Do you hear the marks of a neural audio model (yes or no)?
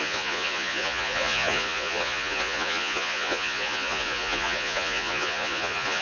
yes